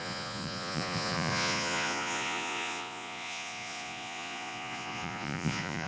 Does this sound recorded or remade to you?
remade